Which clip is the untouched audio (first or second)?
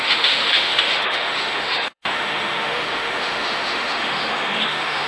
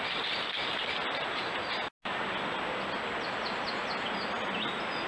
second